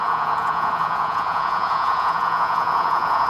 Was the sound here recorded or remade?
remade